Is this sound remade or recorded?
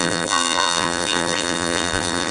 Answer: remade